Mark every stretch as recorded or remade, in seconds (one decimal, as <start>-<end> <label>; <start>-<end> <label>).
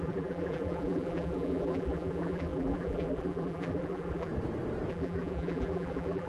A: 0.0-4.3 remade; 4.3-4.9 recorded; 4.9-6.3 remade